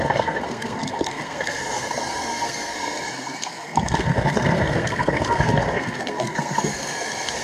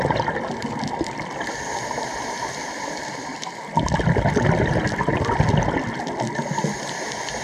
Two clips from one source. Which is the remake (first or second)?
first